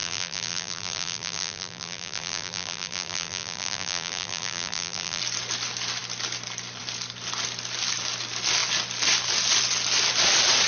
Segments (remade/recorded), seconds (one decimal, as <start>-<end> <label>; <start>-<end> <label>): 0.0-5.2 remade; 5.2-10.7 recorded